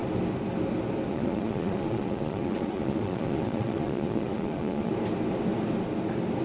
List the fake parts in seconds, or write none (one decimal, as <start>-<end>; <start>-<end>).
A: 1.1-4.9